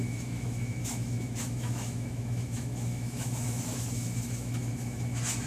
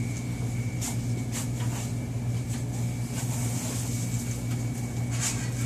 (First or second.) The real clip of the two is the second